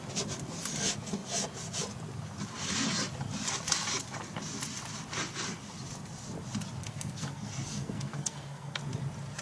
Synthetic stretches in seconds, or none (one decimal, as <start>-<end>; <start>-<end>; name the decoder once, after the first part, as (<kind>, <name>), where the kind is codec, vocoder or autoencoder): 6.8-8.8 (codec, SNAC)